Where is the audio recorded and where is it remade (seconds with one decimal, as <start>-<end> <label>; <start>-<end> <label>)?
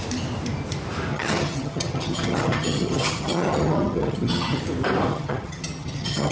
0.0-1.1 recorded; 1.1-4.6 remade; 4.6-5.1 recorded; 5.1-6.3 remade